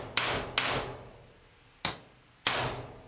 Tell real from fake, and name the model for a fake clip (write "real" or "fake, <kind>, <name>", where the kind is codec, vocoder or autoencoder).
real